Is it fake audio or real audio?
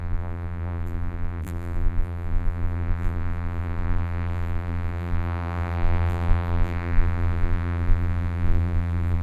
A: fake